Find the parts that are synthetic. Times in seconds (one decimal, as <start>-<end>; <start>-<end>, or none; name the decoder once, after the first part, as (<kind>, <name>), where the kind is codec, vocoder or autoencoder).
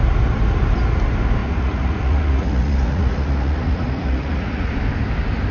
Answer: 1.4-4.7 (vocoder, Vocos)